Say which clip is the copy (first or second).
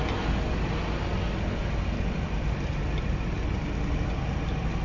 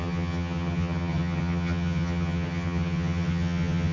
second